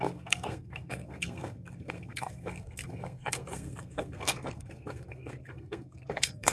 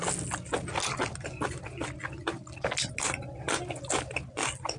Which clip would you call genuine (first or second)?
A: second